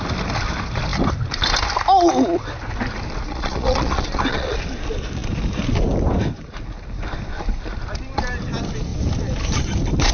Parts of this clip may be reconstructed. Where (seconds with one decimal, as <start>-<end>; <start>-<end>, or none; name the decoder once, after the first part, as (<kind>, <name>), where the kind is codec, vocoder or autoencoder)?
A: 3.3-4.6 (vocoder, Vocos)